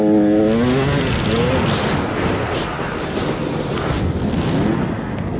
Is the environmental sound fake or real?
real